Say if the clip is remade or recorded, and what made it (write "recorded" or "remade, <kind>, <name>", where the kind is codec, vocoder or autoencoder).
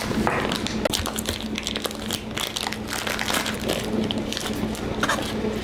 recorded